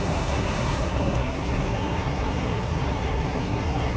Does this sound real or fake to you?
fake